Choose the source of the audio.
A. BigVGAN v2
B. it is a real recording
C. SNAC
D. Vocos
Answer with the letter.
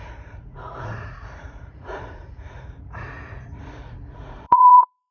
D